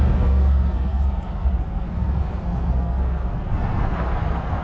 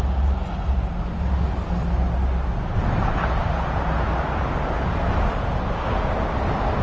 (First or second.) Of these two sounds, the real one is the second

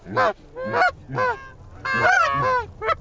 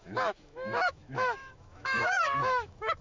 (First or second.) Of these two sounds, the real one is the first